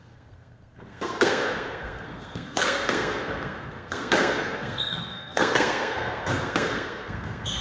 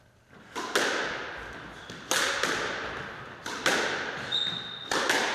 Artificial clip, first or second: first